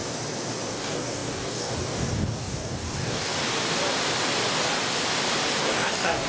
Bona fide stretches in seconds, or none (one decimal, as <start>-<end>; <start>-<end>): 0.0-0.7; 3.4-5.6